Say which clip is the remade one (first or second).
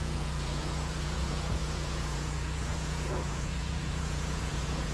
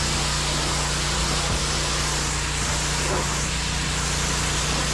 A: first